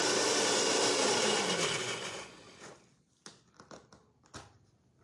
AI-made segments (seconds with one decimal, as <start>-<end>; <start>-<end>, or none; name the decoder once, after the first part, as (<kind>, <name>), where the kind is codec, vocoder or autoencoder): 1.8-2.4 (vocoder, Vocos)